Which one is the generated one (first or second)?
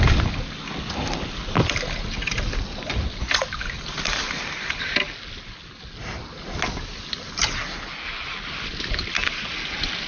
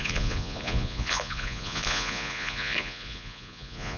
second